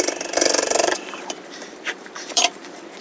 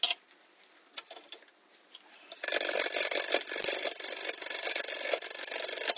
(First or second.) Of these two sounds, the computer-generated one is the first